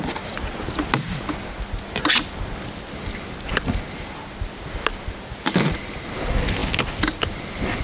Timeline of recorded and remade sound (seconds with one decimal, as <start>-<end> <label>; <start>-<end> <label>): 0.0-7.8 recorded